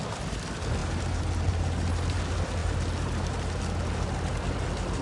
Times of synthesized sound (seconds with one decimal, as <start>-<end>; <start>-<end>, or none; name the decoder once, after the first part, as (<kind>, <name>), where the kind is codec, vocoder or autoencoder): none